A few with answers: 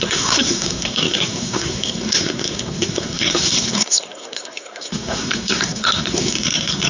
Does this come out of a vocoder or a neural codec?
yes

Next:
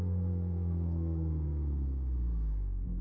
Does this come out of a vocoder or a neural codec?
yes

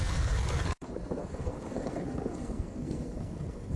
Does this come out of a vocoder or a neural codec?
yes